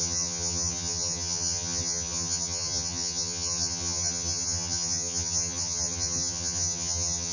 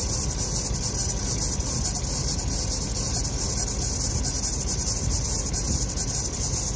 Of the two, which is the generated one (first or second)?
first